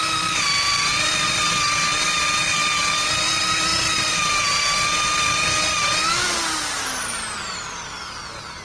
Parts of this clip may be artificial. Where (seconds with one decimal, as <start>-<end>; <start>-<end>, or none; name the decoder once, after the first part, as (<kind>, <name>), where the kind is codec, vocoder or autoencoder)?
none